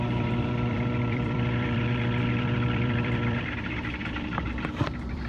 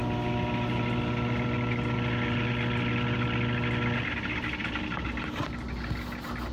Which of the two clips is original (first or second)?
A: second